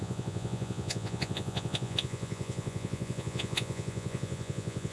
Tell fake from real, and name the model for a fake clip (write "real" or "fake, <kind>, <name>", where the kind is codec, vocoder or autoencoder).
fake, vocoder, Vocos